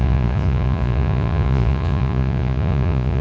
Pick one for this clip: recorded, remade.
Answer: remade